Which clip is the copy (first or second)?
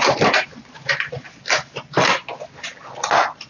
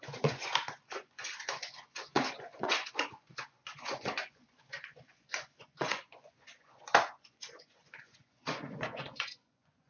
second